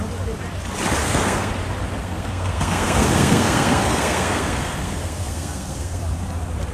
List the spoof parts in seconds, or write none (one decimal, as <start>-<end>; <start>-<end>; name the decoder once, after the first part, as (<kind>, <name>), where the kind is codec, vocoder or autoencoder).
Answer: 1.0-1.5 (codec, SNAC); 2.0-6.0